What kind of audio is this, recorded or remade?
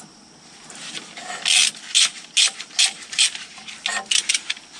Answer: recorded